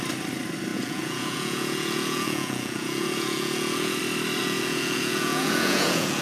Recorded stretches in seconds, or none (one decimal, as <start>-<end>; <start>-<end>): 0.0-0.7; 4.0-4.4